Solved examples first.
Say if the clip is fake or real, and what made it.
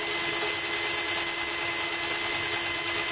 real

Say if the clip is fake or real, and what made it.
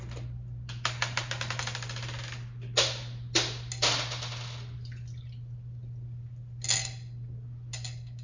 real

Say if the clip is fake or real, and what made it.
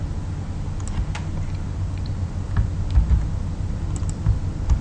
real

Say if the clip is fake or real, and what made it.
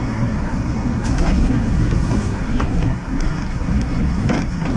fake, codec, SNAC